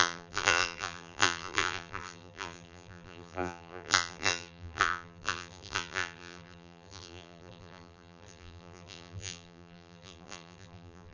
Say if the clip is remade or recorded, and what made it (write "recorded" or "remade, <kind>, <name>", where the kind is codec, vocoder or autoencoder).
remade, vocoder, BigVGAN v2